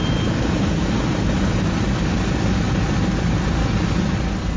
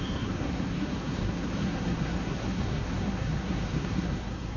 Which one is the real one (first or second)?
first